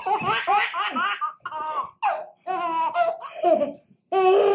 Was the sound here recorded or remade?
recorded